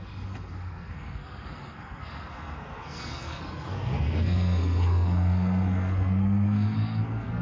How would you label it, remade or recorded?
remade